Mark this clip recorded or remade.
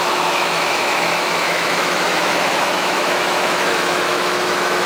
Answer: remade